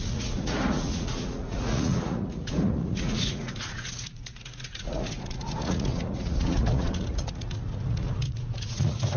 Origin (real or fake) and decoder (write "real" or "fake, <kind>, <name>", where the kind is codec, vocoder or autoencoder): fake, vocoder, Vocos